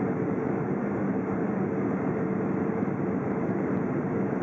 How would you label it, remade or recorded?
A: remade